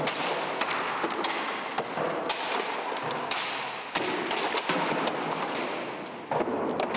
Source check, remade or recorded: recorded